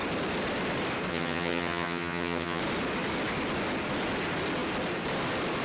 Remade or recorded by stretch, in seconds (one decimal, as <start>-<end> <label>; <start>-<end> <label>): 0.0-1.1 recorded; 1.1-2.6 remade; 2.6-5.6 recorded